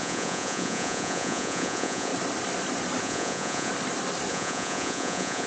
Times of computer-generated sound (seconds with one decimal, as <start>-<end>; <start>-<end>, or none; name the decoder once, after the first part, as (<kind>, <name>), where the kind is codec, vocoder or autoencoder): 0.0-2.1 (vocoder, Vocos); 3.0-3.7; 4.3-5.5